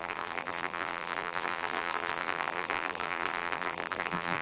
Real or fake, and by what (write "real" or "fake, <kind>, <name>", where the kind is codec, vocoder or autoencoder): fake, vocoder, BigVGAN v2